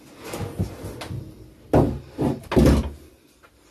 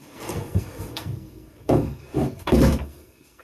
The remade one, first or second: second